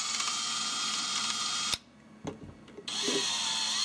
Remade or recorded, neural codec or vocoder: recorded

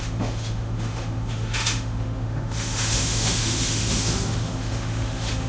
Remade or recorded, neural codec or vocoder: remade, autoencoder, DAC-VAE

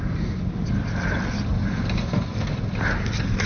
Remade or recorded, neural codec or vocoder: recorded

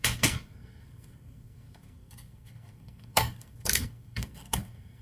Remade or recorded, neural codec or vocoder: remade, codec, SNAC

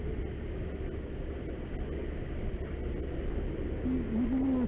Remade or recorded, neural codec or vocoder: recorded